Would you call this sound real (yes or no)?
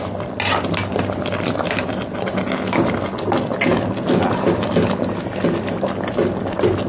yes